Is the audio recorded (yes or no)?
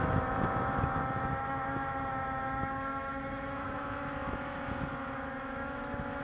no